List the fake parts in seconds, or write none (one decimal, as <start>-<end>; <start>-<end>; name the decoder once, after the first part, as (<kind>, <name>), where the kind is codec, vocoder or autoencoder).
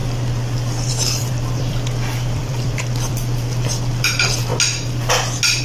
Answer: 0.9-4.5 (vocoder, BigVGAN v2)